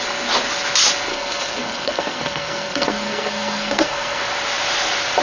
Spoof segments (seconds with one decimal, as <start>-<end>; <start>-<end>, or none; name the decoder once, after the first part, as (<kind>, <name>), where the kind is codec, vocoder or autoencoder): 1.1-4.2 (codec, SNAC)